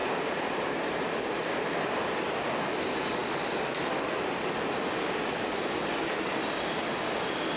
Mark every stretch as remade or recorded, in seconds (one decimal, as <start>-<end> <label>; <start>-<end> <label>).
0.0-1.0 remade; 1.0-7.6 recorded